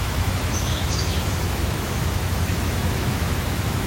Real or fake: fake